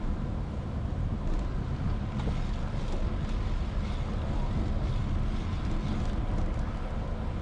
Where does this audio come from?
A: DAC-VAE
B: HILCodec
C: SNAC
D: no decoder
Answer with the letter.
D